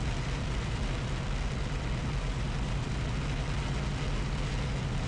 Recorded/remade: recorded